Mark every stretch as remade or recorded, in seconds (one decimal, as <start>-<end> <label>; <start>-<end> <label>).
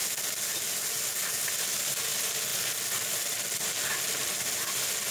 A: 0.0-5.1 recorded